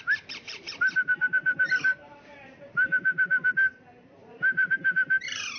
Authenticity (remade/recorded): remade